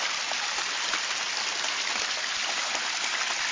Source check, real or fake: real